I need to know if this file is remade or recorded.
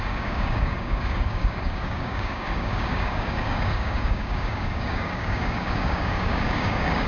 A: remade